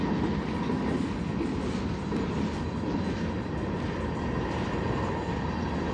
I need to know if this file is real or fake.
real